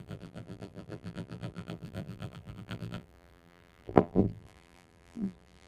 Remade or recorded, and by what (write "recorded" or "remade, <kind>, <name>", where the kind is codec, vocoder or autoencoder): remade, vocoder, BigVGAN v2